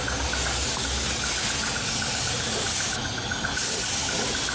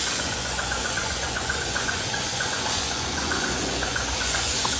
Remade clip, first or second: second